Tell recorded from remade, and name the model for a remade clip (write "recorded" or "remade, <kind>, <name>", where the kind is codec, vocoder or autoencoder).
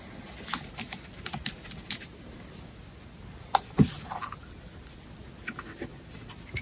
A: recorded